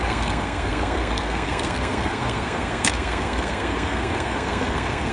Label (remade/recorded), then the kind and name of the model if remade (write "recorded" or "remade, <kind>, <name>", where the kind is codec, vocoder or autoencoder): remade, codec, SNAC